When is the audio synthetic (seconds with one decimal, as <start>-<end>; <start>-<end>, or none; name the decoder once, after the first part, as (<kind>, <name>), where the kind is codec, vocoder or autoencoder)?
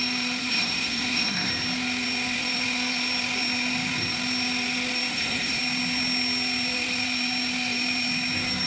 0.4-1.5 (codec, SNAC); 5.1-5.6